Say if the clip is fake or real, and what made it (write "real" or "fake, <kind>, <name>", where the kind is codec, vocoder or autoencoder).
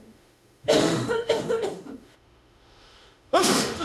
fake, autoencoder, DAC-VAE